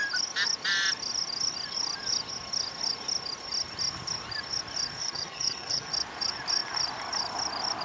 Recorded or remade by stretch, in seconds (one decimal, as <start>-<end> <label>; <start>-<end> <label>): 0.0-5.0 recorded; 5.0-5.9 remade; 5.9-7.8 recorded